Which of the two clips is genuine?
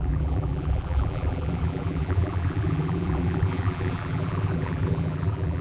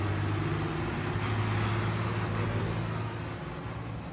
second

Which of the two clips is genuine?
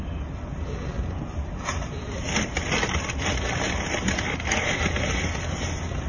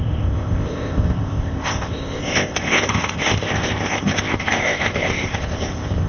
first